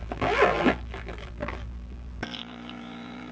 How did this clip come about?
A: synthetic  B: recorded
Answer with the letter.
A